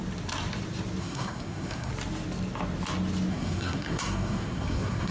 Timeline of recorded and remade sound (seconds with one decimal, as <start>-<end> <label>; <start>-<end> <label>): 0.0-1.0 recorded; 1.0-1.9 remade; 1.9-3.3 recorded; 3.3-5.1 remade